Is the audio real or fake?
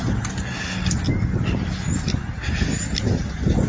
real